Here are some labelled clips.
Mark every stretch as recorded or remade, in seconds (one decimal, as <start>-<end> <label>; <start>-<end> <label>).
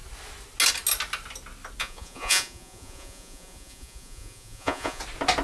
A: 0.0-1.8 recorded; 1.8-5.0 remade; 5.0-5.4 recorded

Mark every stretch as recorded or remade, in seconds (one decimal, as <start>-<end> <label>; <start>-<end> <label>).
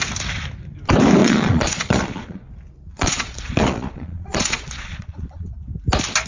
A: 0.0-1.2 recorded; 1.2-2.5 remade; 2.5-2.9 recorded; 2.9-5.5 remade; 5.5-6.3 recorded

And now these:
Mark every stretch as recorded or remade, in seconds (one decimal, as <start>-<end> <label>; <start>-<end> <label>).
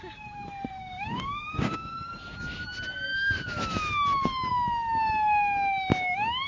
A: 0.0-0.8 recorded; 0.8-2.1 remade; 2.1-6.5 recorded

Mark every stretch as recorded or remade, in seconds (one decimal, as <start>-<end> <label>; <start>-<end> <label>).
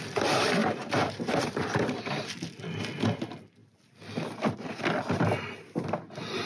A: 0.0-0.6 recorded; 0.6-1.9 remade; 1.9-6.5 recorded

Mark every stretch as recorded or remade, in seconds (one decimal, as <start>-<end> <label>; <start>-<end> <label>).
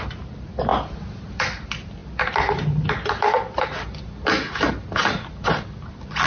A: 0.0-6.3 recorded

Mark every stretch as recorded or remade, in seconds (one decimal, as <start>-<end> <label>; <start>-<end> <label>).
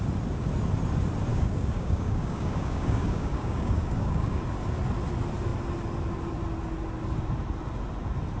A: 0.0-1.3 recorded; 1.3-4.4 remade; 4.4-8.4 recorded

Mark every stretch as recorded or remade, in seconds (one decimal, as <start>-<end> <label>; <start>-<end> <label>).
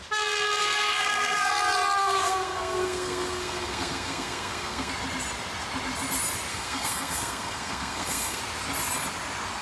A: 0.0-0.6 recorded; 0.6-1.5 remade; 1.5-2.0 recorded; 2.0-4.9 remade; 4.9-6.5 recorded; 6.5-8.4 remade; 8.4-9.6 recorded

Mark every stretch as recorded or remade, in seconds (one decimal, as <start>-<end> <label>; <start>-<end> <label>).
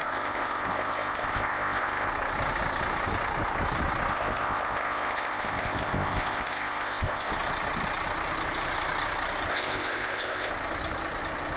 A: 0.0-2.1 remade; 2.1-4.1 recorded; 4.1-7.3 remade; 7.3-9.5 recorded; 9.5-10.5 remade; 10.5-11.6 recorded